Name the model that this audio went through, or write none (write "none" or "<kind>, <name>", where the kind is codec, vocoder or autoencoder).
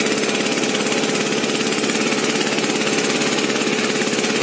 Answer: none